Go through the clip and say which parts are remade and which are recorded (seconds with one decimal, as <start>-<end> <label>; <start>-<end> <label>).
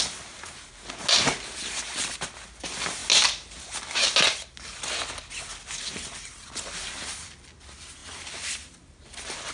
0.0-9.5 recorded